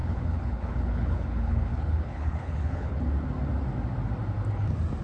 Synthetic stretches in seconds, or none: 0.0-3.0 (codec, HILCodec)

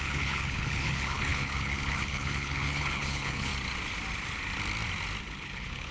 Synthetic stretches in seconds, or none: 0.0-3.5 (codec, HILCodec); 5.2-5.9

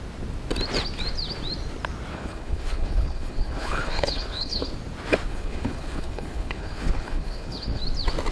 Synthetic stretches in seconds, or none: 2.1-4.7 (codec, HILCodec); 5.3-7.8

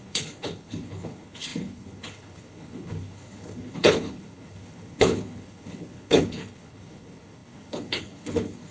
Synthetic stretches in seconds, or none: 0.0-8.7 (codec, HILCodec)

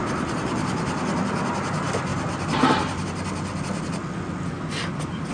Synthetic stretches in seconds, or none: none

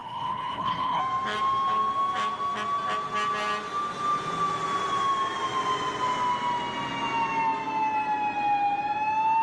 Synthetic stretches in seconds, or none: 0.0-1.0 (codec, HILCodec)

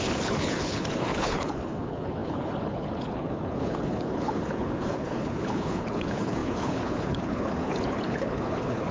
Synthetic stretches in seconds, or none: 0.0-8.9 (codec, HILCodec)

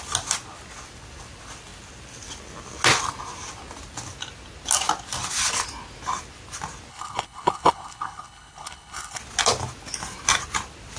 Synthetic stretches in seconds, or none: 6.9-9.2 (codec, HILCodec)